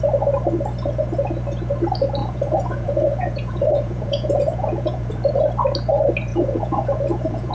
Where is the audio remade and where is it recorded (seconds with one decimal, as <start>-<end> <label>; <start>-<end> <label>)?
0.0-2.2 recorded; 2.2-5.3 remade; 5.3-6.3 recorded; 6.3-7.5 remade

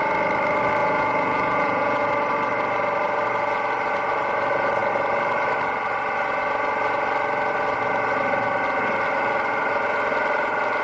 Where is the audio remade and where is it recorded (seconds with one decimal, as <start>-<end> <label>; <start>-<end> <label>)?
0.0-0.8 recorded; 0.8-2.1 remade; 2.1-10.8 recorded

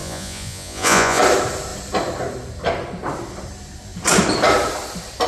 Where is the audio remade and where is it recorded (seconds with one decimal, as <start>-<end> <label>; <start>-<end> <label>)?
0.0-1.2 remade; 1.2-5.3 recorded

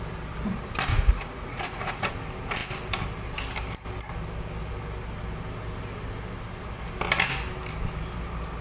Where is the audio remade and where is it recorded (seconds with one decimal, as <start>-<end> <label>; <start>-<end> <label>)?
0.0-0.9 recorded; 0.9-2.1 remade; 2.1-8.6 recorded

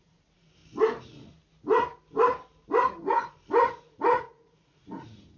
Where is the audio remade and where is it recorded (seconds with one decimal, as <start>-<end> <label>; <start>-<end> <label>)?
0.0-0.6 remade; 0.6-3.8 recorded; 3.8-5.4 remade